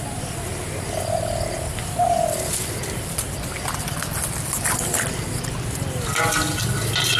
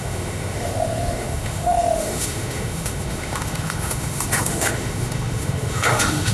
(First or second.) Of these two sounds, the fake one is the second